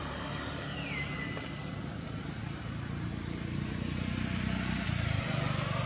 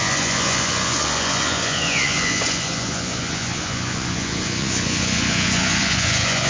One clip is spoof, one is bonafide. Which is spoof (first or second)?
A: second